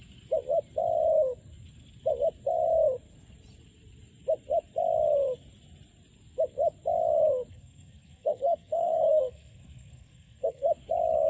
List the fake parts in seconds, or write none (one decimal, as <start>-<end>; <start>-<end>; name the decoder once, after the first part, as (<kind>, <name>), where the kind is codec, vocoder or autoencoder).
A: 7.5-10.7 (codec, SNAC)